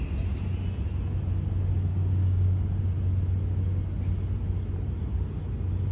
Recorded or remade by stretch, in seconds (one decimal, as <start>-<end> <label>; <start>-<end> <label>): 0.0-1.9 recorded; 1.9-2.8 remade; 2.8-5.9 recorded